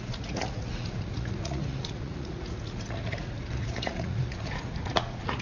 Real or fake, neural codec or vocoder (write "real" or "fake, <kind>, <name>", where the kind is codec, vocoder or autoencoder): fake, vocoder, Vocos